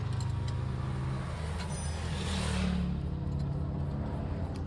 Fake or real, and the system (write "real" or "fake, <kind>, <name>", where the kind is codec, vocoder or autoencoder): real